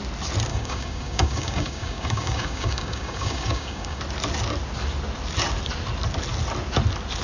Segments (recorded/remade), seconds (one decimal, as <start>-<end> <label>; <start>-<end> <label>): 0.0-0.5 recorded; 0.5-4.0 remade; 4.0-7.2 recorded